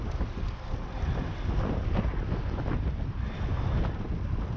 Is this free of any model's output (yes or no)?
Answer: yes